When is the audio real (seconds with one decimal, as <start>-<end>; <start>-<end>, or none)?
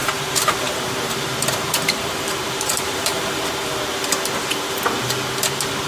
3.5-5.9